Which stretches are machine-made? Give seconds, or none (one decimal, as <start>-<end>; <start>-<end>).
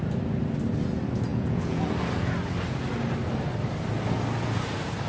1.3-1.8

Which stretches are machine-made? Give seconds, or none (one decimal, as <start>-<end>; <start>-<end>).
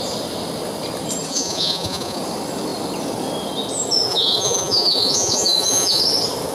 1.3-2.2; 4.1-6.0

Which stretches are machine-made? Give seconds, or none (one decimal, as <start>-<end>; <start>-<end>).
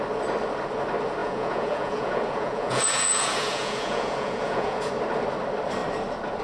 1.2-4.9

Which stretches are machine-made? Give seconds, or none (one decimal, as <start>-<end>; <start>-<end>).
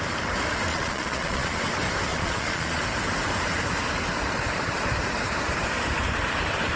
0.7-1.6; 2.1-2.8